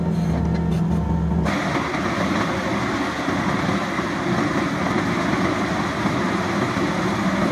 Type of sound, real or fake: real